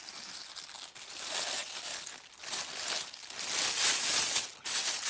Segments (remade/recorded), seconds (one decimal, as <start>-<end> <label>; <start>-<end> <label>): 0.0-5.1 recorded